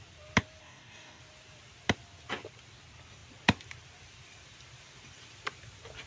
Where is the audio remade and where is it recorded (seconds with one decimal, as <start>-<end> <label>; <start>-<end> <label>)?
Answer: 0.0-0.6 recorded; 0.6-1.2 remade; 1.2-6.1 recorded